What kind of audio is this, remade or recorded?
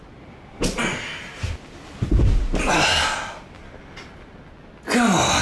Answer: recorded